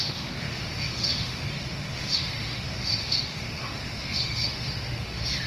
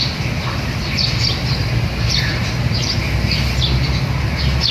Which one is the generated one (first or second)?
first